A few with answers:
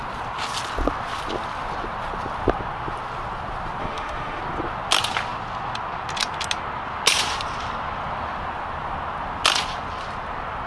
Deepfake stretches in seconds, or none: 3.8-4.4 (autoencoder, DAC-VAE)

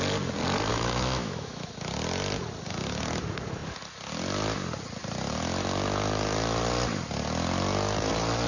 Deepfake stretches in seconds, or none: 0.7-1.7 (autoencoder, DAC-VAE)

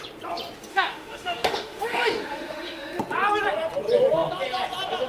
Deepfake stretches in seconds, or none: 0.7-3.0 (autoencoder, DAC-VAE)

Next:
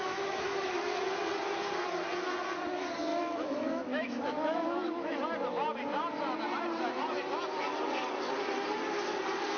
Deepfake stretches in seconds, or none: 0.0-0.8 (autoencoder, DAC-VAE); 3.1-5.2

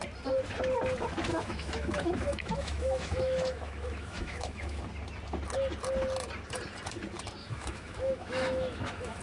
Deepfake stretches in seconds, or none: 1.3-4.8 (autoencoder, DAC-VAE); 7.4-9.2

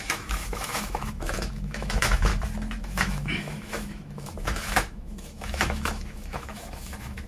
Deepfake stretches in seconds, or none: 0.0-2.3 (autoencoder, DAC-VAE); 2.8-7.3

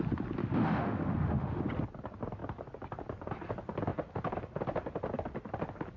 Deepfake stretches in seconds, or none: 0.4-1.6 (autoencoder, DAC-VAE)

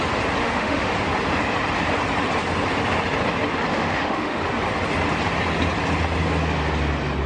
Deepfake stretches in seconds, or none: 0.4-0.9 (autoencoder, DAC-VAE); 3.7-4.4